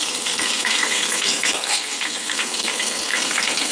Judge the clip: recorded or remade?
remade